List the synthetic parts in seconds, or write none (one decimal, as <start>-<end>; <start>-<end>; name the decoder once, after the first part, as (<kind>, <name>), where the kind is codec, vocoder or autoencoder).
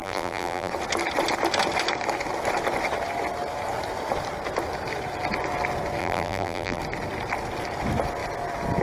0.0-0.7 (vocoder, BigVGAN v2); 6.0-6.8